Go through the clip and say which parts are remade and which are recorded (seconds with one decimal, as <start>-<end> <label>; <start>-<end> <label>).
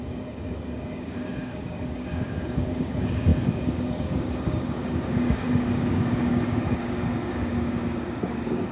0.0-8.7 remade